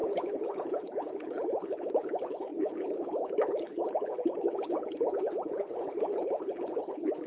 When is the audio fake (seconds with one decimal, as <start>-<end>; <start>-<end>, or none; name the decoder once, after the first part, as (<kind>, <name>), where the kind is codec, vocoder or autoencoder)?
0.0-7.3 (codec, HILCodec)